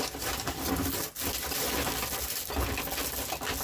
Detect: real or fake real